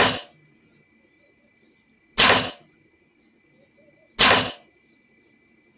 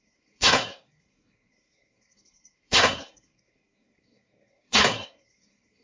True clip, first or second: first